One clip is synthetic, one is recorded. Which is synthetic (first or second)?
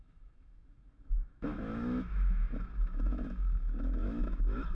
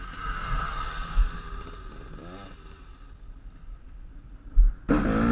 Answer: first